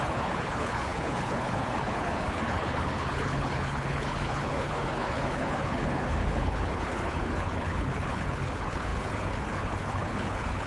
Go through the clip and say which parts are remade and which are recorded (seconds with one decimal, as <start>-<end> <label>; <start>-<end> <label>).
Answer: 0.0-10.7 remade